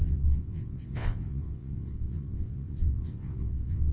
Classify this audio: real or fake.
fake